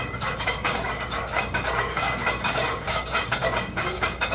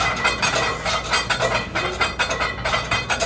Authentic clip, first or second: second